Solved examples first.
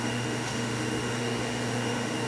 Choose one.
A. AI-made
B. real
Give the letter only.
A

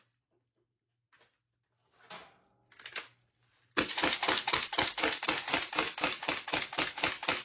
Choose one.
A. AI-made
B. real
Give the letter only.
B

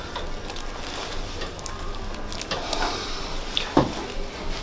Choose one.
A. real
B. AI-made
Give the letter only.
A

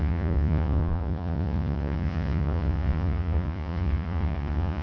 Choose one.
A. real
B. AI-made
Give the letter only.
B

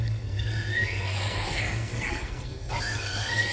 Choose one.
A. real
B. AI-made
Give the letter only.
B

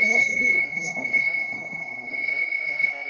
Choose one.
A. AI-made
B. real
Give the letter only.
A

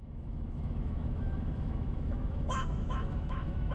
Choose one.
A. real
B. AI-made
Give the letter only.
B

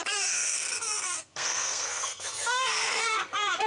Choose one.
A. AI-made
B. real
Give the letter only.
A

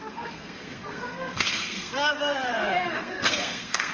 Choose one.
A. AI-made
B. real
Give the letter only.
A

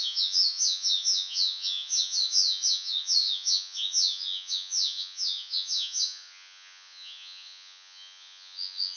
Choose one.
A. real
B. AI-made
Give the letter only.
B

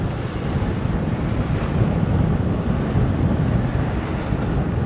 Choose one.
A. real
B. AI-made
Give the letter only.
A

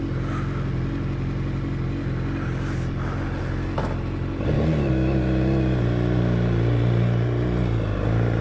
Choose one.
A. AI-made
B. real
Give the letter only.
B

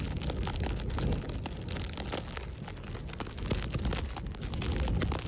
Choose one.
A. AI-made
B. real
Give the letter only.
B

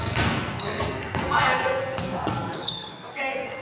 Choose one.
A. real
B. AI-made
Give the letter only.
B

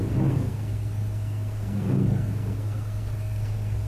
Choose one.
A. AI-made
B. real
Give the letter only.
A